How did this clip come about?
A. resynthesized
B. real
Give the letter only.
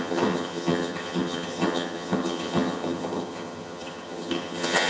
A